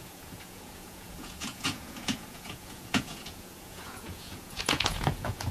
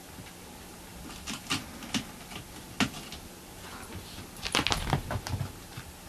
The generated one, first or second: first